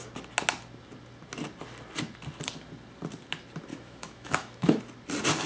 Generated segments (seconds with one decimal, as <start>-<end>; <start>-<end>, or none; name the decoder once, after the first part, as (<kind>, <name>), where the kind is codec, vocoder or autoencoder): 3.7-4.8 (autoencoder, DAC-VAE)